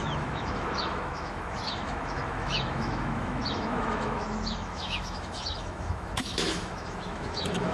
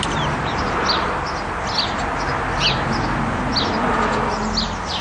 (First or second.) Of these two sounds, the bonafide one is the second